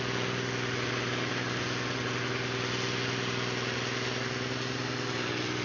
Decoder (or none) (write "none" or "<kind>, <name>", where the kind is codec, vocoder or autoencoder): none